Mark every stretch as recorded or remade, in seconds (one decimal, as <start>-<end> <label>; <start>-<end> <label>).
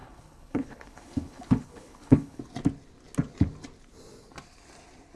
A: 0.0-2.4 remade; 2.4-5.2 recorded